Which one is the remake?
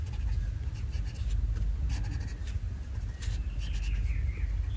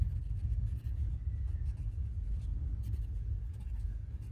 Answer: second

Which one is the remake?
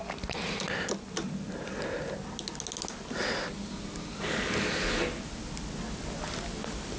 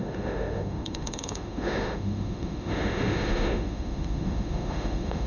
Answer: second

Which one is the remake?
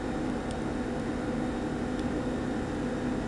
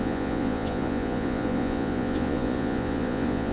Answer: second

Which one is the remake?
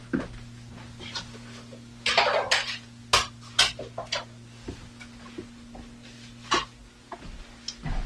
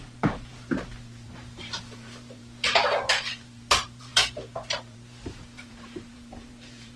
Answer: second